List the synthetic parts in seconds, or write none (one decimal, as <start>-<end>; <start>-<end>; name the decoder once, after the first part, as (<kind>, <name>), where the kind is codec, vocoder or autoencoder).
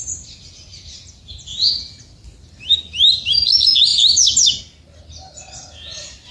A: 0.7-1.7 (vocoder, BigVGAN v2)